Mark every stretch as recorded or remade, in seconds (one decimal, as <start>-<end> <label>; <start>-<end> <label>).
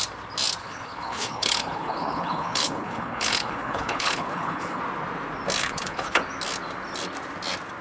0.0-0.6 recorded; 0.6-4.8 remade; 4.8-5.6 recorded; 5.6-6.2 remade; 6.2-7.8 recorded